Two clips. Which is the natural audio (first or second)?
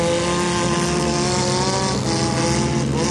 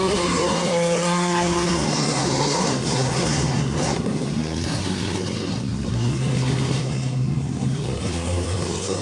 first